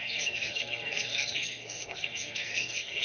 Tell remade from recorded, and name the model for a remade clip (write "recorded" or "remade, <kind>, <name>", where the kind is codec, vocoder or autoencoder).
remade, codec, SNAC